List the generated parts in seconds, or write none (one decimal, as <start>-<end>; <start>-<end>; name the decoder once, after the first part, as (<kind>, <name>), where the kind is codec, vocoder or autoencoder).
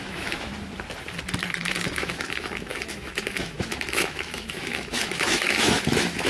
0.0-0.5 (autoencoder, DAC-VAE); 1.4-6.3